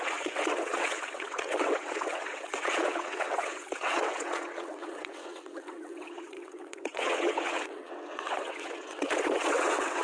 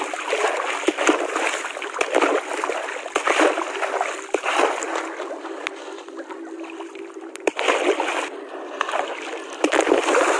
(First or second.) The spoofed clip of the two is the first